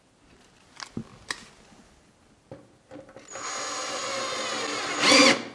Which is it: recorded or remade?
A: recorded